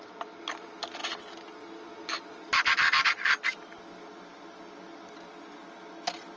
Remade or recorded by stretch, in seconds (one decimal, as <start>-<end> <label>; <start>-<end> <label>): 0.0-6.4 recorded

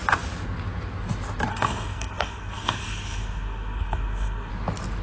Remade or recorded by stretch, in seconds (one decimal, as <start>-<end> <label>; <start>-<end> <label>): 0.0-1.5 recorded; 1.5-4.5 remade; 4.5-5.0 recorded

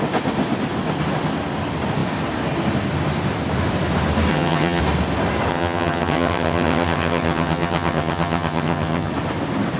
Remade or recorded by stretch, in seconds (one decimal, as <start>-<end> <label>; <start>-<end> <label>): 0.0-4.3 recorded; 4.3-4.8 remade; 4.8-5.5 recorded; 5.5-9.1 remade; 9.1-9.8 recorded

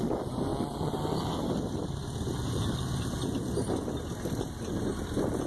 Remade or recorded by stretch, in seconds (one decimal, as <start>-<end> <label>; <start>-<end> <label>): 0.0-0.5 remade; 0.5-3.8 recorded; 3.8-5.5 remade

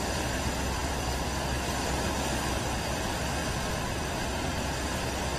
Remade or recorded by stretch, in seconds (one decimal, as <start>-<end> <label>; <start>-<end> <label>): 0.0-0.8 recorded; 0.8-1.5 remade; 1.5-3.4 recorded; 3.4-4.1 remade; 4.1-5.4 recorded

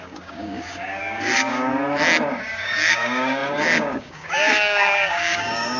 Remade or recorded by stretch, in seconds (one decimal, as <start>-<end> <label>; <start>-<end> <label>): 0.0-1.7 remade; 1.7-2.3 recorded; 2.3-5.8 remade

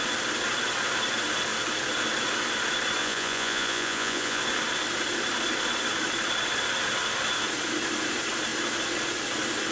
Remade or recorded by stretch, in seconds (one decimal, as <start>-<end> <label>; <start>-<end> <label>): 0.0-3.0 recorded; 3.0-4.4 remade; 4.4-9.7 recorded

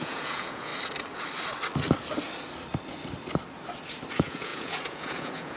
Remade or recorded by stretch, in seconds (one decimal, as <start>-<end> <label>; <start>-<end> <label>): 0.0-0.7 remade; 0.7-4.1 recorded; 4.1-5.6 remade